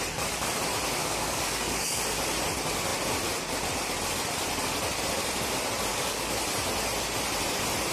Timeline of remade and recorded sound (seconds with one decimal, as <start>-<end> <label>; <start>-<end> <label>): 0.0-1.0 recorded; 1.0-2.0 remade; 2.0-5.9 recorded; 5.9-6.4 remade; 6.4-7.9 recorded